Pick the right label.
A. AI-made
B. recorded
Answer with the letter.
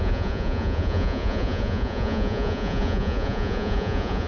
A